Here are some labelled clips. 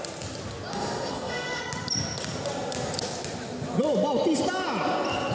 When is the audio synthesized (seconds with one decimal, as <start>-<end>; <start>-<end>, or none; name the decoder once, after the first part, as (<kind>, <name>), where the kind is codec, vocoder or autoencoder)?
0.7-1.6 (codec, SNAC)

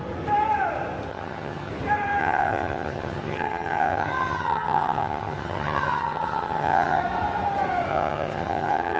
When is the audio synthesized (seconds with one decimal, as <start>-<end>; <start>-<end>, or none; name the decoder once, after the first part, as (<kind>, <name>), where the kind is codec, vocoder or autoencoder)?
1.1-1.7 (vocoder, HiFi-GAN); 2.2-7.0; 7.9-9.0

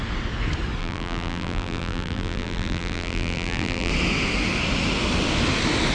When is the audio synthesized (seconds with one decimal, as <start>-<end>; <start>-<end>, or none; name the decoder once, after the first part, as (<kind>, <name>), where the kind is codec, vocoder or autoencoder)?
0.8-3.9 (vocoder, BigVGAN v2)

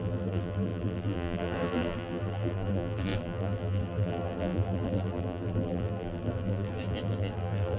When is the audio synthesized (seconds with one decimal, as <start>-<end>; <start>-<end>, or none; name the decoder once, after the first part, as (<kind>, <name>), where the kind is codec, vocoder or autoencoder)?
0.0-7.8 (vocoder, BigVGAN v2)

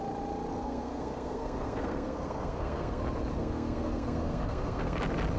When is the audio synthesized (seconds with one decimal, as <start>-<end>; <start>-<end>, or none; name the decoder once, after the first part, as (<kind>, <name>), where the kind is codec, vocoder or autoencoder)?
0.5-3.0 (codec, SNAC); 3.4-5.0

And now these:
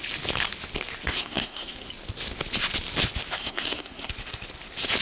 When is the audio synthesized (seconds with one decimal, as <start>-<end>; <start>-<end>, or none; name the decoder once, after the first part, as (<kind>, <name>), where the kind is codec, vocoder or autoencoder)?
1.1-1.9 (codec, SNAC); 3.4-4.1

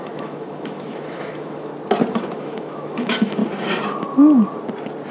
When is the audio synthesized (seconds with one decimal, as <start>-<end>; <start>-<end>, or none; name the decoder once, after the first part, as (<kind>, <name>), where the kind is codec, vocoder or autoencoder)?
0.0-1.7 (autoencoder, DAC-VAE); 2.2-3.4

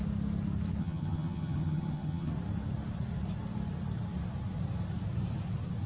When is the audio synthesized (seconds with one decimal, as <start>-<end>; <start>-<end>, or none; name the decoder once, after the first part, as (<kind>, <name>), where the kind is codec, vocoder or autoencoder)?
0.8-2.3 (vocoder, HiFi-GAN)